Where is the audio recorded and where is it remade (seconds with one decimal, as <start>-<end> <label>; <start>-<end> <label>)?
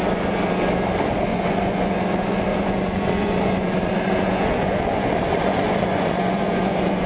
0.0-1.3 recorded; 1.3-2.0 remade; 2.0-2.5 recorded; 2.5-7.1 remade